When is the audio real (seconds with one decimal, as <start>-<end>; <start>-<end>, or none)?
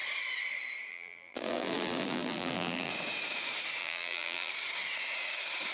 0.0-0.9; 2.9-3.8; 4.5-5.7